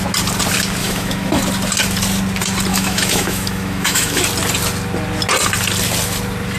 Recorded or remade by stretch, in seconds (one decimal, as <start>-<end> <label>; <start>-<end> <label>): 0.0-0.8 recorded; 0.8-1.4 remade; 1.4-2.7 recorded; 2.7-4.2 remade; 4.2-6.6 recorded